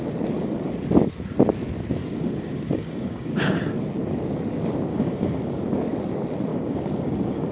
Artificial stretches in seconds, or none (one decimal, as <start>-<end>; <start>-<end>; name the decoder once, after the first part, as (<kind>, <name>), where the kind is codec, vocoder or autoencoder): 2.0-3.6 (codec, DAC); 4.9-5.6; 6.5-7.5